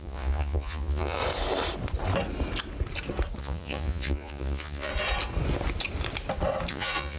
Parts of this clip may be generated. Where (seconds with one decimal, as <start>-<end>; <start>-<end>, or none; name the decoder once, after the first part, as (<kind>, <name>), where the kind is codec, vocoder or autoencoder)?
0.0-1.2 (vocoder, Vocos); 3.4-4.9; 6.7-7.2

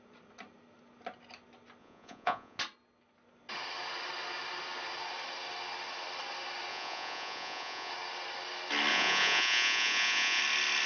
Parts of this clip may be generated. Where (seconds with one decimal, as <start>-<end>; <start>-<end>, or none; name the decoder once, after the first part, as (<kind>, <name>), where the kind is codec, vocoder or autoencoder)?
1.8-2.6 (vocoder, Vocos); 6.7-7.9; 8.9-10.4